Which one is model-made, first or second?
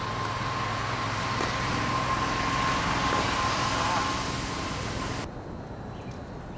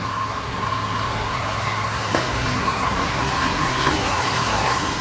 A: second